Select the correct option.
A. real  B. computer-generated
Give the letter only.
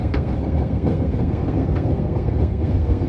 B